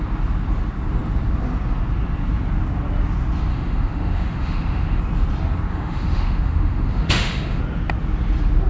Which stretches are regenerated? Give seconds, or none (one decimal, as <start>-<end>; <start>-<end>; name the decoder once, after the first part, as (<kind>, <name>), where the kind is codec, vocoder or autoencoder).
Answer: 3.5-5.0 (autoencoder, DAC-VAE); 5.7-7.6